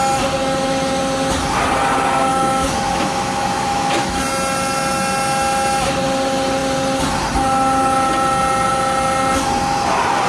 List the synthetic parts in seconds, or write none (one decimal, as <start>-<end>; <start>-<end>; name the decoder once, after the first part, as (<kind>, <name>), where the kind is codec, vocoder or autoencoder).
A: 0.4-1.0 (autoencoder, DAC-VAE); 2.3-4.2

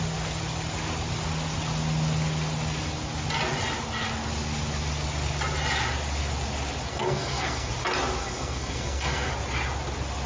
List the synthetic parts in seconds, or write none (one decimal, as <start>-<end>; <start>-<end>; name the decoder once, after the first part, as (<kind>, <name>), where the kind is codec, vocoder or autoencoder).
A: 6.9-7.7 (codec, SNAC); 8.2-9.3

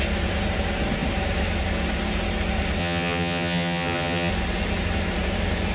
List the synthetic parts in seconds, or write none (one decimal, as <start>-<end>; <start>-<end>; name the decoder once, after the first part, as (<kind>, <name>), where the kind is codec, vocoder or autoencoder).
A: 2.8-4.3 (vocoder, HiFi-GAN)

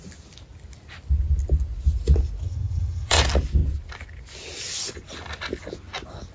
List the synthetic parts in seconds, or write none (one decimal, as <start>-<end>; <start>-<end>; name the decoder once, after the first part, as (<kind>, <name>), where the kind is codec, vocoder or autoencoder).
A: 2.4-3.2 (vocoder, HiFi-GAN)